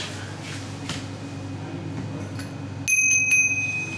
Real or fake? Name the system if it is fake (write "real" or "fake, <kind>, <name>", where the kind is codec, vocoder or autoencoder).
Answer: real